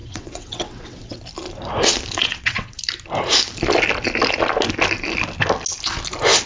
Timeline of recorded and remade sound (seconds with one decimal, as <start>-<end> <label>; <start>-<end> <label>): 0.0-1.2 remade; 1.2-2.2 recorded; 2.2-2.8 remade; 2.8-6.5 recorded